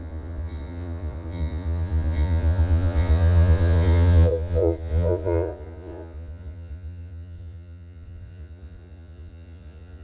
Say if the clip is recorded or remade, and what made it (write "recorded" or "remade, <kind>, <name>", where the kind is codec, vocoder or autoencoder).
remade, vocoder, Vocos